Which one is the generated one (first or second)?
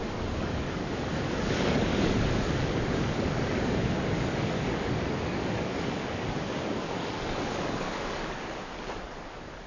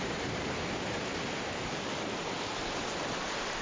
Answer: first